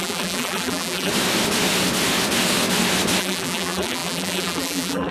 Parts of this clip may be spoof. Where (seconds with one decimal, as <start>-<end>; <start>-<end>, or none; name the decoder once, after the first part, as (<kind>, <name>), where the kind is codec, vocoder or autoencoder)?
0.0-1.1 (vocoder, BigVGAN v2); 3.2-5.1